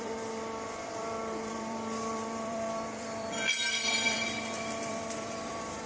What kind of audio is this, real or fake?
fake